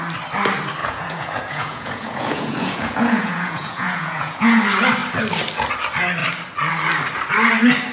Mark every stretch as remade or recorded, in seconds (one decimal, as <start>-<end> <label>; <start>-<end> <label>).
0.0-0.8 recorded; 0.8-4.6 remade; 4.6-7.9 recorded